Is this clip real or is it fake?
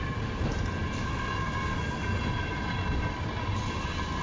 real